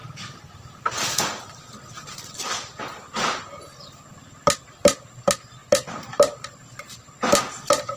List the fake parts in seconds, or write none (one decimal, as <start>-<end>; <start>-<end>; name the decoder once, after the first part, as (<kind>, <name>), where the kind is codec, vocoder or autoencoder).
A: 0.0-3.4 (vocoder, BigVGAN v2); 5.6-6.5

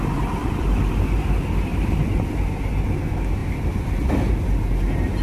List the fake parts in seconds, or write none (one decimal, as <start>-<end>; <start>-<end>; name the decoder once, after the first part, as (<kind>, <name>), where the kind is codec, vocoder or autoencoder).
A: 0.4-0.9 (vocoder, BigVGAN v2); 1.7-2.3; 3.4-4.3

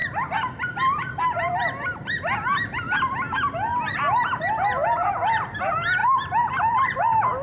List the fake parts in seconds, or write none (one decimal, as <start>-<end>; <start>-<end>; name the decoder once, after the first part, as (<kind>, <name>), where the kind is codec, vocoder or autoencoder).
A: 0.0-1.5 (vocoder, BigVGAN v2)

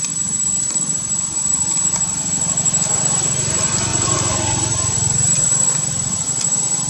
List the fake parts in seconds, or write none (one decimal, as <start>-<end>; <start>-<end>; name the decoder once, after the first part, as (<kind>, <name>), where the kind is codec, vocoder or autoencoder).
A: 0.0-6.9 (vocoder, BigVGAN v2)

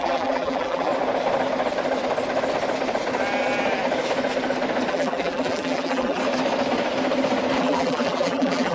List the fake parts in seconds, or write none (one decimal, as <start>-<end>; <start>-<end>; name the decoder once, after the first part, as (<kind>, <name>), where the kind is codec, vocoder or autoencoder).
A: 0.0-0.9 (vocoder, BigVGAN v2); 4.9-6.2; 7.6-8.7

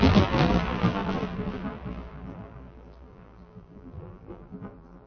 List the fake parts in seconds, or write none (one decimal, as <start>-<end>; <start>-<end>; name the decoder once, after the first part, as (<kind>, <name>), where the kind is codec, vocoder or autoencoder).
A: 0.0-5.1 (vocoder, BigVGAN v2)

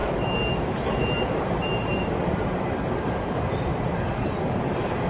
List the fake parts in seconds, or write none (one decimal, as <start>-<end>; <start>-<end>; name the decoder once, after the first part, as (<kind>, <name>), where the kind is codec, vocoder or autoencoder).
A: 0.0-3.1 (vocoder, BigVGAN v2); 3.7-4.2

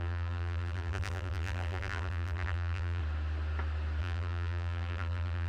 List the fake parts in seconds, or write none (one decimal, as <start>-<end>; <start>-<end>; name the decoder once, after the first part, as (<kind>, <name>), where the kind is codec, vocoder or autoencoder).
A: 0.0-3.0 (vocoder, BigVGAN v2); 4.0-5.5